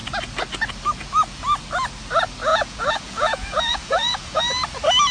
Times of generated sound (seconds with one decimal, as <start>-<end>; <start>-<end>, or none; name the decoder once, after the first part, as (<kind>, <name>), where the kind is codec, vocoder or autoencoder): 2.5-4.4 (vocoder, Vocos)

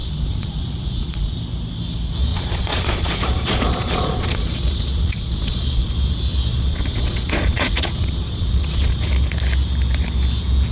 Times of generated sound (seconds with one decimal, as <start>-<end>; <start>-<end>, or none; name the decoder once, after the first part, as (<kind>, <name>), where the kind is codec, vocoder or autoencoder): 0.0-1.4 (vocoder, Vocos); 2.3-5.9; 6.5-9.1

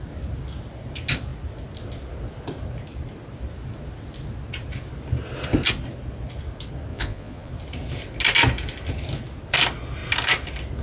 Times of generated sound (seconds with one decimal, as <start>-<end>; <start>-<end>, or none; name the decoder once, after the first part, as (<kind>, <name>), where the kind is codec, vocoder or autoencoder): 6.9-7.5 (vocoder, Vocos)

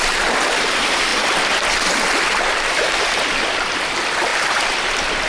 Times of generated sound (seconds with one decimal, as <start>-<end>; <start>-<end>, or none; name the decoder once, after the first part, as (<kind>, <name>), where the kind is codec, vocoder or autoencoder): none